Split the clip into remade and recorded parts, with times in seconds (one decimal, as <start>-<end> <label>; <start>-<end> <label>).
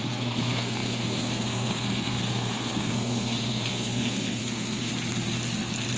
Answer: 0.0-4.9 remade; 4.9-6.0 recorded